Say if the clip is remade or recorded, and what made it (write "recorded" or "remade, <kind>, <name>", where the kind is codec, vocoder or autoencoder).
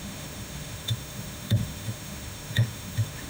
remade, autoencoder, DAC-VAE